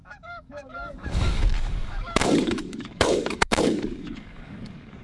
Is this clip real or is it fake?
fake